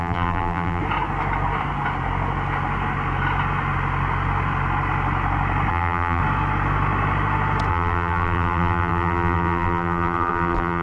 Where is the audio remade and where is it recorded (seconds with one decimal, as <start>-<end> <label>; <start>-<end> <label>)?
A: 0.0-0.8 remade; 0.8-5.7 recorded; 5.7-6.2 remade; 6.2-7.7 recorded; 7.7-10.8 remade